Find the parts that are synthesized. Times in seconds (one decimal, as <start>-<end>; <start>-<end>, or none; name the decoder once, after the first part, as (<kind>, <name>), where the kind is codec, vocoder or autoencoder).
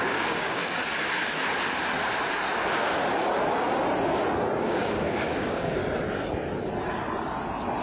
0.0-0.6 (codec, DAC); 4.6-5.8